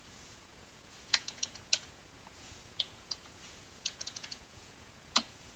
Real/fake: fake